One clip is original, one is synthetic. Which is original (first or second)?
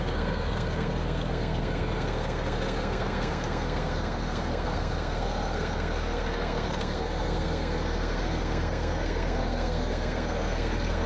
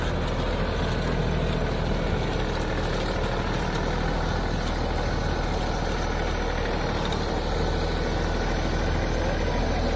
second